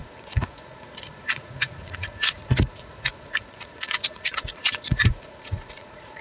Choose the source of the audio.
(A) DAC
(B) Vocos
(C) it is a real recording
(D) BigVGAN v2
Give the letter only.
B